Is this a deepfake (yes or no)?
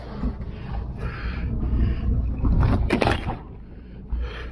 no